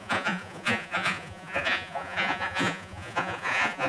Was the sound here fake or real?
fake